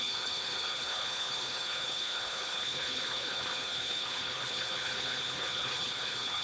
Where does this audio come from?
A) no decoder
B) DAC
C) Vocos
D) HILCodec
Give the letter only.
D